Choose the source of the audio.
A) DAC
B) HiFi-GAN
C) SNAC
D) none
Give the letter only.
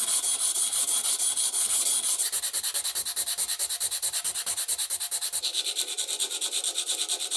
D